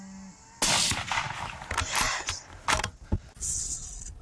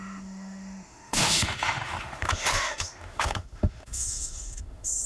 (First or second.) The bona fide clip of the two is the first